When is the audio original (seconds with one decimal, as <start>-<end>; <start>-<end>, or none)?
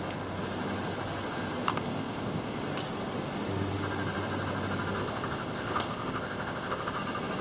0.0-1.7; 2.6-5.0; 7.0-7.4